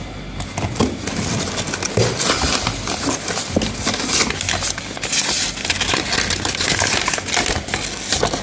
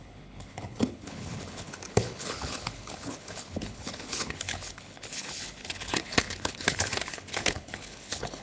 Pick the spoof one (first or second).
second